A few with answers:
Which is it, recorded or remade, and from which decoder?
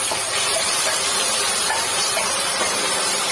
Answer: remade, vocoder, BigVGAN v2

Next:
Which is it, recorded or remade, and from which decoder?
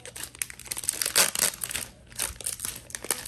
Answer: recorded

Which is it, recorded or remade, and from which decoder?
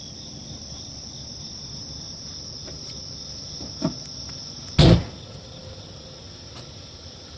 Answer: recorded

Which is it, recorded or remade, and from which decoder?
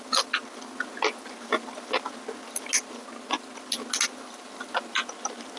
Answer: recorded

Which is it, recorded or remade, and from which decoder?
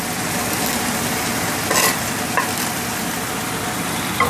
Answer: recorded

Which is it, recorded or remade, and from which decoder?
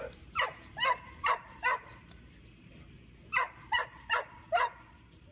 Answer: remade, vocoder, BigVGAN v2